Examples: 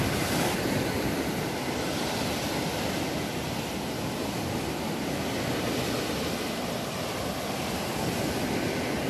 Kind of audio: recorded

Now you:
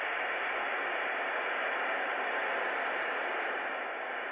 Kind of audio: recorded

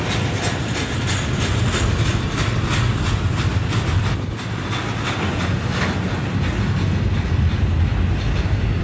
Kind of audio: recorded